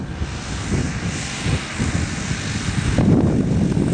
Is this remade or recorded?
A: recorded